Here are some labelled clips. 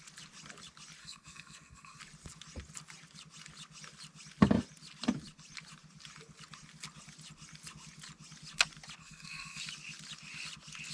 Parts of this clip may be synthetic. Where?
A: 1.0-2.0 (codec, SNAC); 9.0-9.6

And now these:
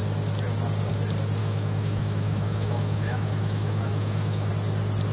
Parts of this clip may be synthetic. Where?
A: 1.4-4.5 (autoencoder, DAC-VAE)